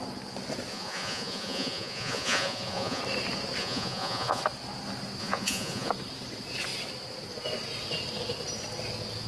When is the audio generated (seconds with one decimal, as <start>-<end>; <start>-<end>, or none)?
0.7-3.0; 3.6-4.4; 5.2-5.9